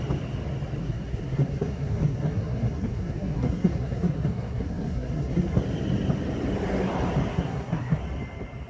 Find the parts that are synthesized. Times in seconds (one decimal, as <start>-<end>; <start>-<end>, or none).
0.8-5.6; 7.3-8.0